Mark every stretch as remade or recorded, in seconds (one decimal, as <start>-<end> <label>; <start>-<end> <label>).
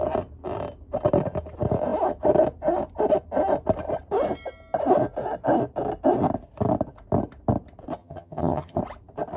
0.0-8.0 recorded; 8.0-8.8 remade; 8.8-9.4 recorded